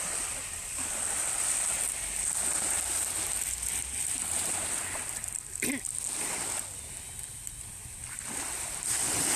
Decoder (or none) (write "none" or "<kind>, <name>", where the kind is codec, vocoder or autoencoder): none